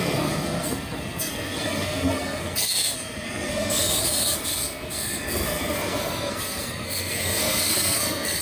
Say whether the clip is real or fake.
fake